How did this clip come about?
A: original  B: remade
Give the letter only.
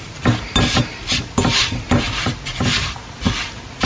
A